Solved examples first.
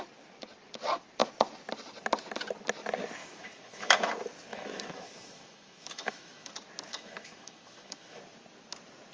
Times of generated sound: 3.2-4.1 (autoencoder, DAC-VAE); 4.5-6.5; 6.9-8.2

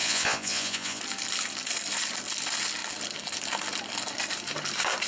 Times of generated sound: 0.0-1.0 (vocoder, Vocos)

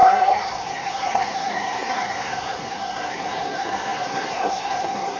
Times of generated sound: 0.0-5.2 (codec, SNAC)

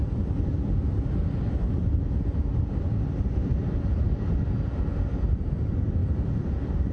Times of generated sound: none

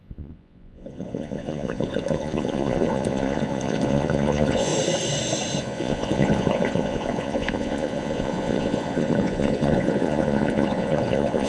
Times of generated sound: 0.0-4.7 (vocoder, Vocos); 5.6-11.5

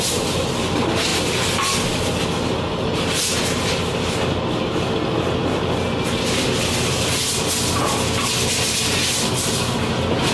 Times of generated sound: none